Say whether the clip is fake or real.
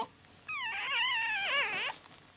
real